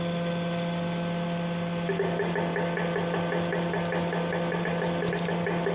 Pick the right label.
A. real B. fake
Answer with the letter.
A